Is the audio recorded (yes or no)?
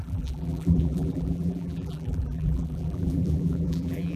no